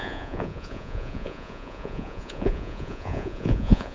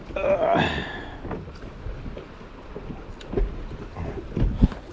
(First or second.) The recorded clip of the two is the second